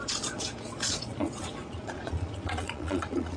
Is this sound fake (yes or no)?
yes